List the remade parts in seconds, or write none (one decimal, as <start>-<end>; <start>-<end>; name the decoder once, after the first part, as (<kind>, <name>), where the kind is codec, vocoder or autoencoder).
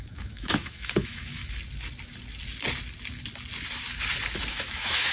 0.0-1.4 (autoencoder, DAC-VAE); 4.5-5.1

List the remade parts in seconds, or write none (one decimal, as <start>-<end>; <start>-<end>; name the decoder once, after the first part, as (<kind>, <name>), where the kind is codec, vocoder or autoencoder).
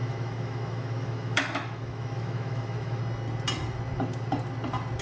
0.0-3.0 (autoencoder, DAC-VAE)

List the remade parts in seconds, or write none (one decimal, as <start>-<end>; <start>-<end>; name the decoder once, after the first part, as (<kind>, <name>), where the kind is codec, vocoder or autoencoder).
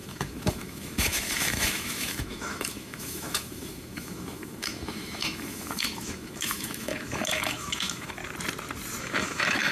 0.0-8.2 (autoencoder, DAC-VAE); 9.0-9.7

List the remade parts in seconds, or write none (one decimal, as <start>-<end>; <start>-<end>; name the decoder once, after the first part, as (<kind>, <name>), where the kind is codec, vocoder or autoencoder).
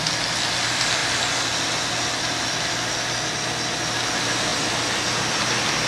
none